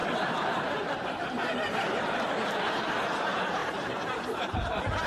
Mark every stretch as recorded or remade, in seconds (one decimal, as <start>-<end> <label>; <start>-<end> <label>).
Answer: 0.0-2.9 remade; 2.9-5.1 recorded